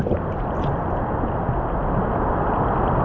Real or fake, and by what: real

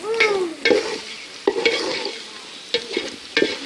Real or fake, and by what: real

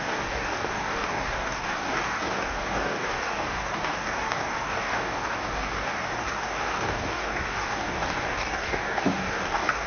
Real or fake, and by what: fake, codec, DAC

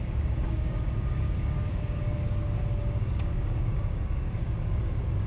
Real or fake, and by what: fake, codec, DAC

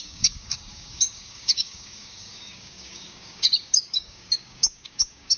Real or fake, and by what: fake, codec, DAC